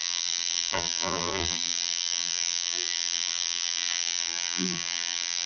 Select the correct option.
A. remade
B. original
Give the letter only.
A